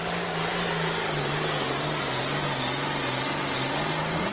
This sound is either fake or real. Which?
real